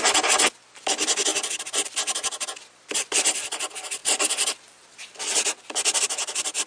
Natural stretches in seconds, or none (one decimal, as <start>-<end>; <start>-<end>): 0.0-6.7